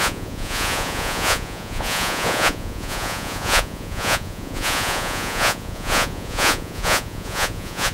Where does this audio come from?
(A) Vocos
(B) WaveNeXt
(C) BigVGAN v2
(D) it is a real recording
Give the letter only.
A